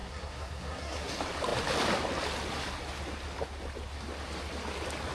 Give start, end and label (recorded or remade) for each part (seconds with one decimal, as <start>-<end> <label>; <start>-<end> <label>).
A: 0.0-1.1 remade; 1.1-5.1 recorded